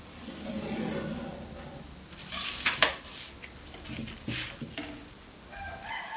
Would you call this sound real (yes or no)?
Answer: yes